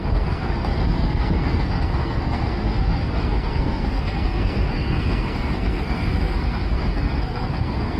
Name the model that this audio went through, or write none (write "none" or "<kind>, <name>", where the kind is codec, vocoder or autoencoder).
codec, SNAC